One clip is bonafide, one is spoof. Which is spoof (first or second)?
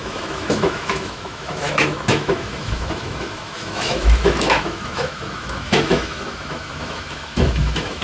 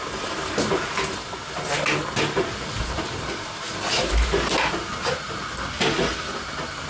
first